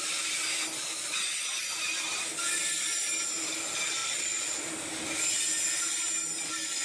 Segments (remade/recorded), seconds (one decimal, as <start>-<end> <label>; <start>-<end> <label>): 0.0-4.0 recorded; 4.0-4.6 remade; 4.6-6.8 recorded